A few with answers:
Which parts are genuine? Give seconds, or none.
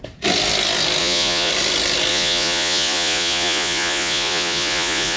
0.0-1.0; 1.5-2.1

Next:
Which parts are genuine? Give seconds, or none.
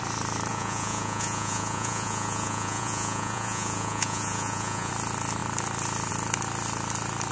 0.0-0.5; 4.9-7.3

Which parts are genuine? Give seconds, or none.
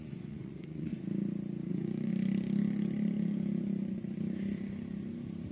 0.9-1.7; 2.1-5.5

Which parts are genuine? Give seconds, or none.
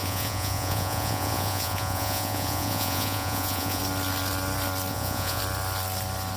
3.8-4.9; 5.4-6.4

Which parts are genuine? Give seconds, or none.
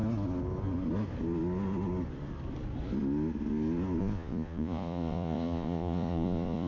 0.0-4.0